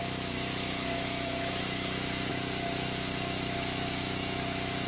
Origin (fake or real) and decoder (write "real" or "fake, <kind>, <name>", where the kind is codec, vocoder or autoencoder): fake, autoencoder, DAC-VAE